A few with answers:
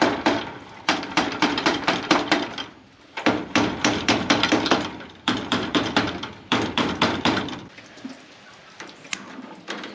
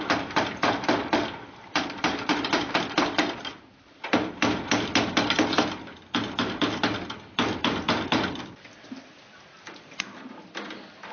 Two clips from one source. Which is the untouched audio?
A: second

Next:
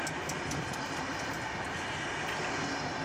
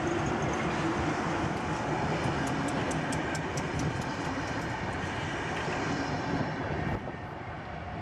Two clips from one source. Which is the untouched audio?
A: first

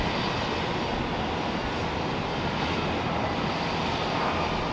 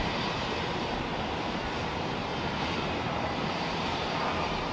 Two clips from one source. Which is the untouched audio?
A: first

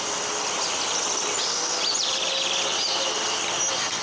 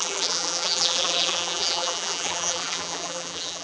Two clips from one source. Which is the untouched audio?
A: first